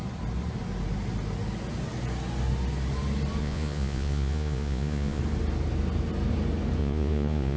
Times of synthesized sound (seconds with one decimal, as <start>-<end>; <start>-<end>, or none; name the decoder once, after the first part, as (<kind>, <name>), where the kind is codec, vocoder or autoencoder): 3.4-5.2 (vocoder, Vocos); 6.8-7.6